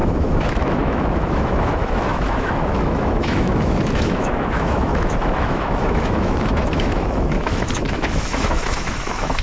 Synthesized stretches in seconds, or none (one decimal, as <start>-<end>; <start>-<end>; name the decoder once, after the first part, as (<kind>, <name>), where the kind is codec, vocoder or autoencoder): 0.0-9.4 (autoencoder, DAC-VAE)